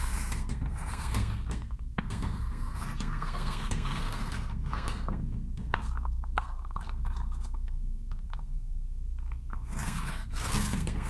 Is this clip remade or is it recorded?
remade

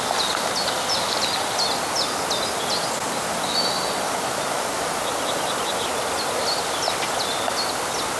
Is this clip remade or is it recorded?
recorded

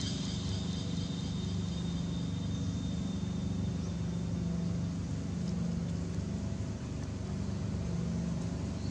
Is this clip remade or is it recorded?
recorded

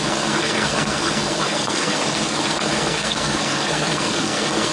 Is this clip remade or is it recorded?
remade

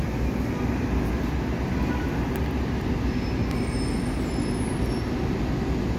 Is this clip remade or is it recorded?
recorded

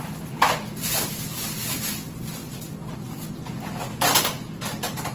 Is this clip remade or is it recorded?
recorded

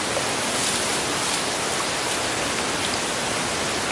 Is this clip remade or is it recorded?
recorded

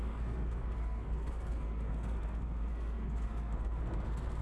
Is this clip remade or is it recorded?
remade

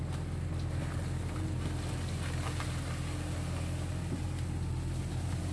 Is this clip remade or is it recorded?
recorded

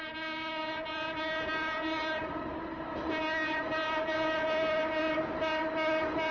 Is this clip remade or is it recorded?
recorded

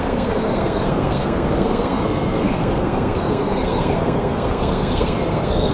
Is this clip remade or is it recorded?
remade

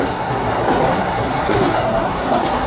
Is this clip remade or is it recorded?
remade